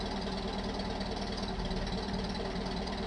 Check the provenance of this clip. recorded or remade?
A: recorded